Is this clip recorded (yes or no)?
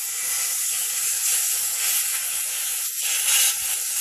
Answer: yes